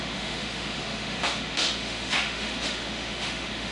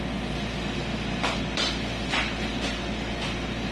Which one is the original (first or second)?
second